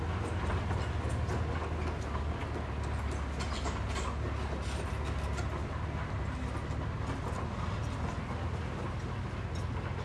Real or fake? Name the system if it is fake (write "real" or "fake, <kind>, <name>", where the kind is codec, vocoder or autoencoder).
real